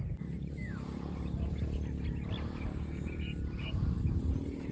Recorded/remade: recorded